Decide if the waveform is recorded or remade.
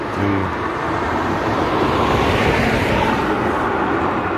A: remade